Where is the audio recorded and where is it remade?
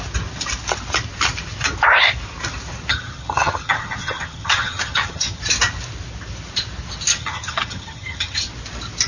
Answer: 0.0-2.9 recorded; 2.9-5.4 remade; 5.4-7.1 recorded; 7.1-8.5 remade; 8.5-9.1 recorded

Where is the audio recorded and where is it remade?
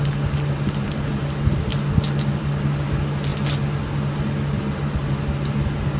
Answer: 0.0-6.0 recorded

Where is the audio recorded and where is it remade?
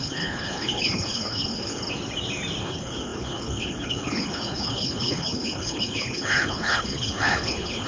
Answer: 0.0-1.8 remade; 1.8-2.6 recorded; 2.6-7.9 remade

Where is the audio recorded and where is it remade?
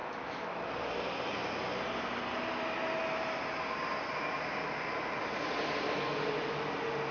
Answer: 0.0-0.7 remade; 0.7-7.1 recorded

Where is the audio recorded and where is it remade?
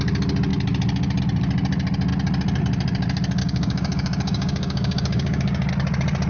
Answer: 0.0-3.4 recorded; 3.4-5.7 remade; 5.7-6.3 recorded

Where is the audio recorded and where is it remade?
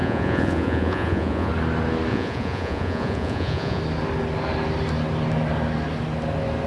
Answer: 0.0-1.5 remade; 1.5-2.1 recorded; 2.1-3.8 remade; 3.8-6.7 recorded